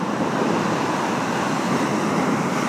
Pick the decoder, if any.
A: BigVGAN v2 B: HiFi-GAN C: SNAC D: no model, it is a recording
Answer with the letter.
D